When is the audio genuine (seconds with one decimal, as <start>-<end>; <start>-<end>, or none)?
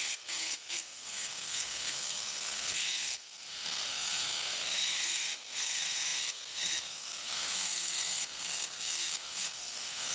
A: none